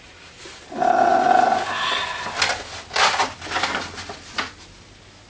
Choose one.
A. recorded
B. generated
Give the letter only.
A